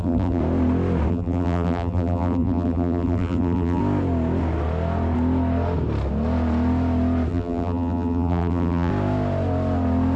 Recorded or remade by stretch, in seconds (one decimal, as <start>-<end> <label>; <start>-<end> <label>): 0.0-0.4 remade; 0.4-1.1 recorded; 1.1-3.8 remade; 3.8-7.3 recorded; 7.3-8.9 remade; 8.9-10.2 recorded